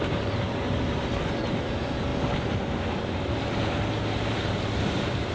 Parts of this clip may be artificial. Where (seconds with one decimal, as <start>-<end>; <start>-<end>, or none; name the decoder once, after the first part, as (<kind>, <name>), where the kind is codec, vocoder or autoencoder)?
none